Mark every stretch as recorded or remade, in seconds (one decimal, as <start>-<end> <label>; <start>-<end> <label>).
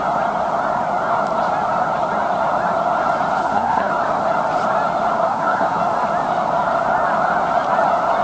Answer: 0.0-3.4 recorded; 3.4-3.9 remade; 3.9-5.2 recorded; 5.2-5.8 remade; 5.8-8.2 recorded